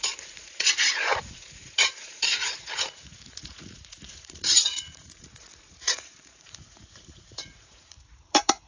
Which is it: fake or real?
fake